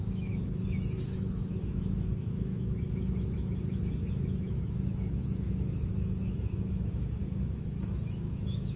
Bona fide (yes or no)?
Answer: no